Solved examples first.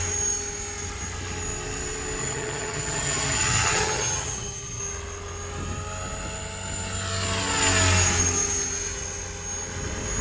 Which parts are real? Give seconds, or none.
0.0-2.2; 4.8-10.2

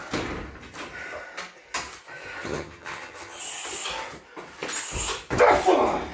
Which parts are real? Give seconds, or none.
0.0-2.4; 3.4-6.1

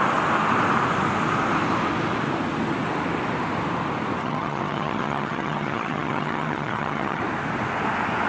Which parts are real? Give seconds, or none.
0.0-4.2; 7.2-8.3

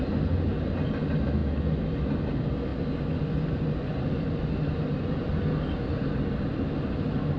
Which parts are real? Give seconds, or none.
0.0-7.4

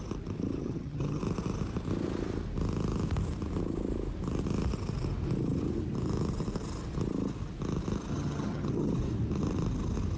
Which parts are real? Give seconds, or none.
0.0-0.6; 1.2-8.1; 8.9-10.2